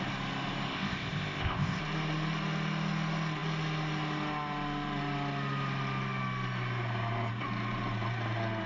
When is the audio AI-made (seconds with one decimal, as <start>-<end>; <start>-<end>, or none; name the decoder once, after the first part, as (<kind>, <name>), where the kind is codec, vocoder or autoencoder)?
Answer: 0.7-1.8 (codec, ZipCodec)